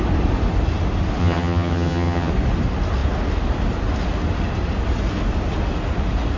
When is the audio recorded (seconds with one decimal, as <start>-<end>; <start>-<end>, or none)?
0.0-1.2; 2.3-6.4